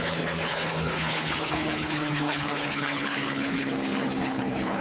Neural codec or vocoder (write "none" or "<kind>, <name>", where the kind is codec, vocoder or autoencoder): codec, HILCodec